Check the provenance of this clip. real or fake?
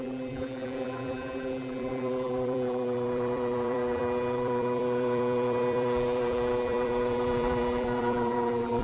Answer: fake